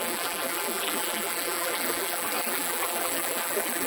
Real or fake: fake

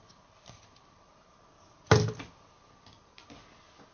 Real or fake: real